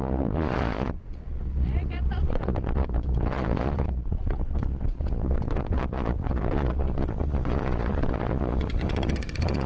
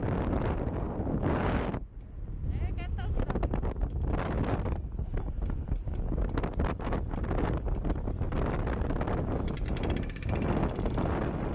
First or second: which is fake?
first